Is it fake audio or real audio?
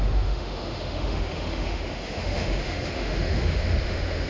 fake